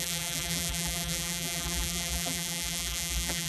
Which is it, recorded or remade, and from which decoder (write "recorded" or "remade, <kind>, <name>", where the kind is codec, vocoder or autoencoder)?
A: remade, vocoder, BigVGAN v2